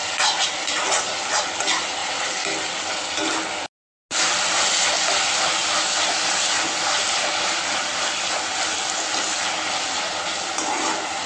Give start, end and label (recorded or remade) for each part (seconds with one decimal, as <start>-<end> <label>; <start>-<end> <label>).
0.0-11.3 recorded